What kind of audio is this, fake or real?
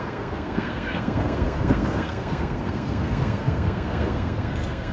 fake